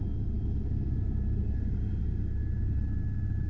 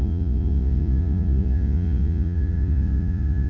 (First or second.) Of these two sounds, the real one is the first